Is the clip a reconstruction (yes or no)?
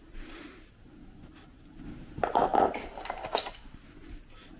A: no